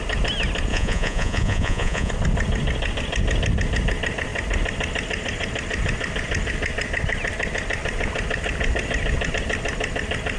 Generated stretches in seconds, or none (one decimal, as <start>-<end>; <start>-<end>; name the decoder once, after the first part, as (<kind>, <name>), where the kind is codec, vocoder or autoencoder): 0.7-2.1 (vocoder, Vocos)